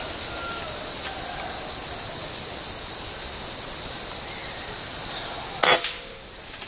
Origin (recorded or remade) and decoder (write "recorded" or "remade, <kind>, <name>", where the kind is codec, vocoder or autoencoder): recorded